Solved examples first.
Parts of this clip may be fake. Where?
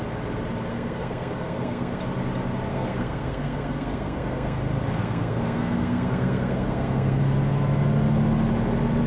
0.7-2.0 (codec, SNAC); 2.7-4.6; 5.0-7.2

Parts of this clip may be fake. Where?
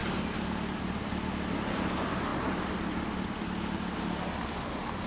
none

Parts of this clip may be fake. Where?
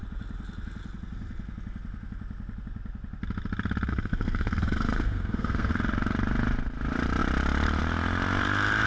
3.9-5.7 (codec, SNAC)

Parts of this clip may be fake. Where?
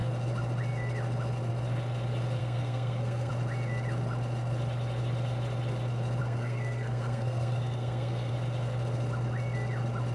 2.4-3.3 (codec, SNAC); 6.2-8.3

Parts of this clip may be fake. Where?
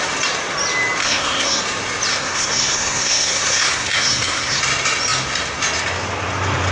1.0-1.6 (codec, SNAC); 2.1-4.6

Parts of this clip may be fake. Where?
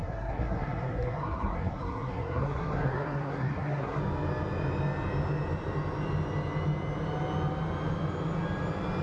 0.0-4.0 (codec, SNAC)